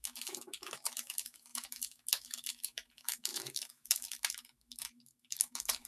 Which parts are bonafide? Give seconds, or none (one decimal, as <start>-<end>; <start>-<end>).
none